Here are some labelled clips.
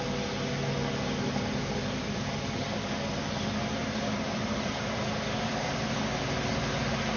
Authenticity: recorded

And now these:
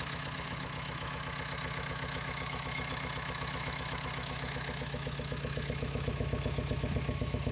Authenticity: remade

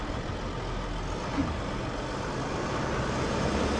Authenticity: recorded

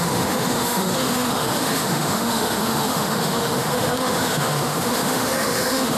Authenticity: remade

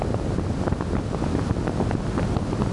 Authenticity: recorded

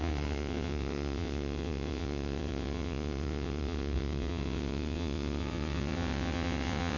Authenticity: remade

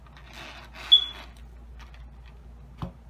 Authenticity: recorded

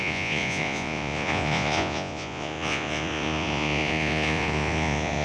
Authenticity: remade